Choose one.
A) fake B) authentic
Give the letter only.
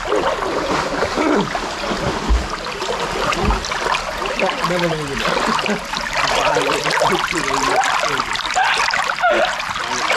B